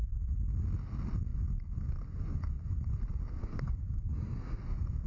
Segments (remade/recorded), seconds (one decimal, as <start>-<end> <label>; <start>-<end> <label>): 0.0-3.4 recorded; 3.4-4.6 remade; 4.6-5.1 recorded